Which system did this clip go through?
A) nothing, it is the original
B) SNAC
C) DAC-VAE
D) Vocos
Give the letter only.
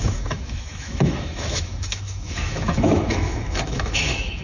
C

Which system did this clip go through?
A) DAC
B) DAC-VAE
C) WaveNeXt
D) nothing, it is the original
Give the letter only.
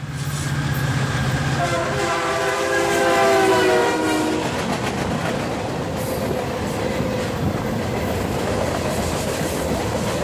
D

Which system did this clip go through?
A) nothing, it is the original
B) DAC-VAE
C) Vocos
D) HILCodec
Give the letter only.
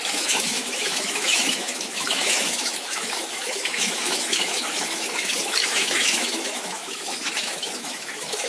B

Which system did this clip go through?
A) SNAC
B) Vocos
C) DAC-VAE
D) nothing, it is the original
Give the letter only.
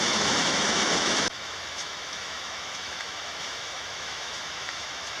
C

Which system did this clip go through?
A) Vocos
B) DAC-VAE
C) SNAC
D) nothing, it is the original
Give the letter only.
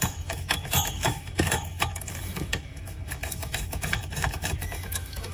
B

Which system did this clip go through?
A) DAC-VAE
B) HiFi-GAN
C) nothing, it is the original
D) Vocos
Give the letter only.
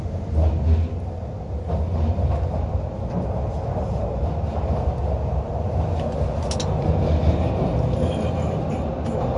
C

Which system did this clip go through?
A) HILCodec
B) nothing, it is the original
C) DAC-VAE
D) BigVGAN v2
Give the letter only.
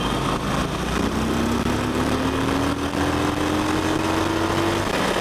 B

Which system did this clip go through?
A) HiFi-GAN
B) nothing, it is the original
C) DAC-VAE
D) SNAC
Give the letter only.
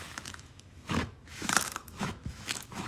C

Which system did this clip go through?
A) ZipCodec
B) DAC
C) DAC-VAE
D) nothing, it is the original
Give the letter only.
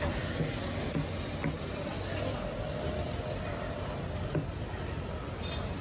D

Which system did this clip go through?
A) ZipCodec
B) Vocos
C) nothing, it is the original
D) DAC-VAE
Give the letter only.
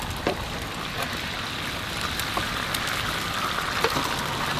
C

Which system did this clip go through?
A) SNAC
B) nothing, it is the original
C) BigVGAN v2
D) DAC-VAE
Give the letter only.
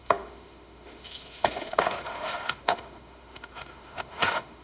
D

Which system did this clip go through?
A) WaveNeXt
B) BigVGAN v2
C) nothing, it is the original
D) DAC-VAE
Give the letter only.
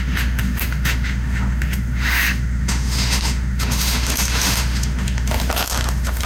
D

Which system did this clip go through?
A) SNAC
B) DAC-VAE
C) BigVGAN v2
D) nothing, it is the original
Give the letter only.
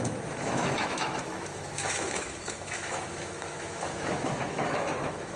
B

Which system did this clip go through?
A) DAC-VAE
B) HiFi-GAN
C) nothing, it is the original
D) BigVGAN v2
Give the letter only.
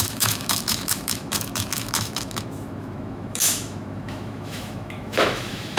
A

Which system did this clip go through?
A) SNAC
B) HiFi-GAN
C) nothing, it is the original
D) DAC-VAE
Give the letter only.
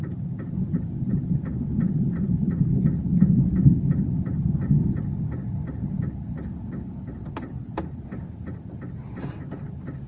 C